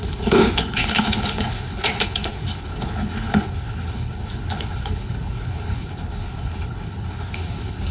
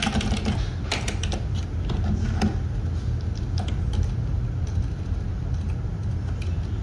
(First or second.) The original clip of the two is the second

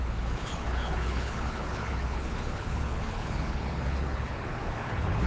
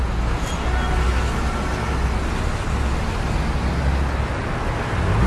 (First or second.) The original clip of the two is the second